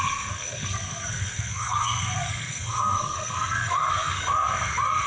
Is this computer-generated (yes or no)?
yes